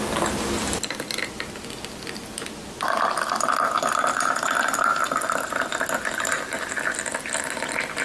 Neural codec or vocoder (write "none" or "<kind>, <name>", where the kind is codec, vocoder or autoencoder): none